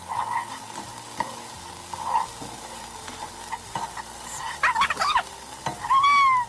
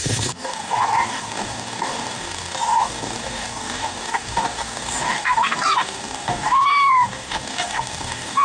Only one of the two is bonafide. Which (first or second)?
first